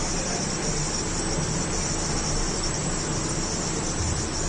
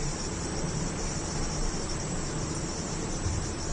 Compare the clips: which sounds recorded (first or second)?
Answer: first